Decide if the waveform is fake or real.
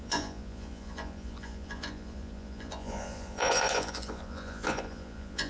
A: fake